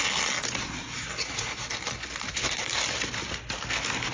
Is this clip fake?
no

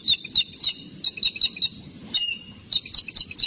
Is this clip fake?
no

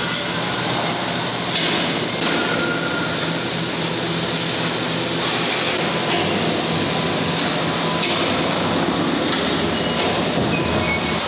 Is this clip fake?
no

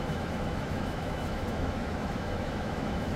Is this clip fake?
yes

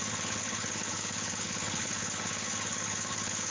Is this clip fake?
yes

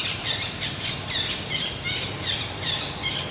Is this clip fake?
no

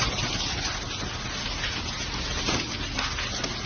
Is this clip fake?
no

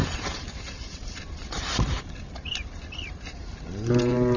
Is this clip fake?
yes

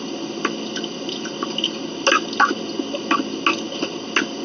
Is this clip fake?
no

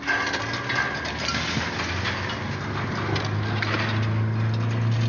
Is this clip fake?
no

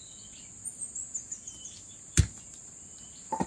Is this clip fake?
no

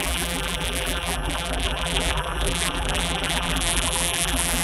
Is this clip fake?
yes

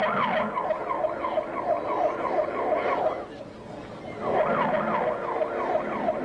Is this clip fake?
no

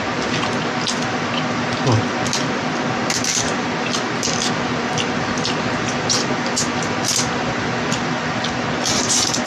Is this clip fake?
no